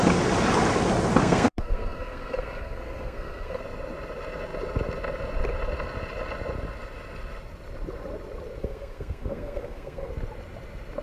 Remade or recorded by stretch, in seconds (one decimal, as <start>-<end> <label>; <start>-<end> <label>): 0.0-1.2 recorded; 1.2-3.6 remade; 3.6-8.6 recorded; 8.6-10.1 remade; 10.1-11.0 recorded